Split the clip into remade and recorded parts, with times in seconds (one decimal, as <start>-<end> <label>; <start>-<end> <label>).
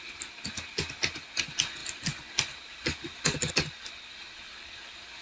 0.0-5.2 recorded